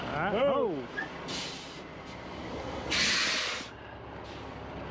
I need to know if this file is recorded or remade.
recorded